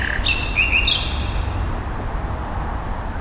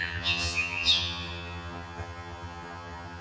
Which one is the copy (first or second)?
second